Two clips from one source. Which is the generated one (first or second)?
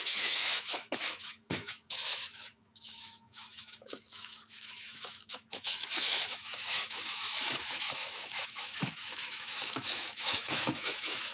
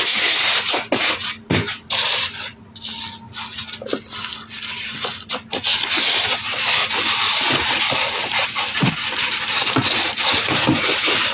first